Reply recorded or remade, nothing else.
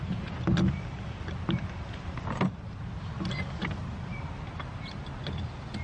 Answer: recorded